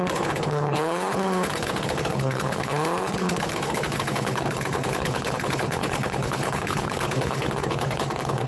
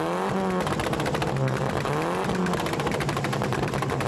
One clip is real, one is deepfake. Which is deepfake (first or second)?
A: first